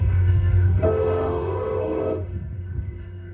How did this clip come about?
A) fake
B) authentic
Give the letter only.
A